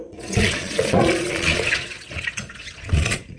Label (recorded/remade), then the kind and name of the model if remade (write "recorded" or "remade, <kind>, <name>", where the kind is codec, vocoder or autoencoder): remade, vocoder, Vocos